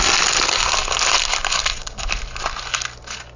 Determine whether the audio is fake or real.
real